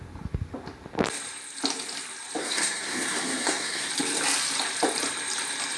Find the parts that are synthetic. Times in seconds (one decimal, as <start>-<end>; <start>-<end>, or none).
2.4-3.9